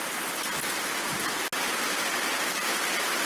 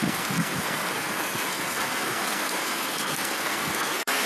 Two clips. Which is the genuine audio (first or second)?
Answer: first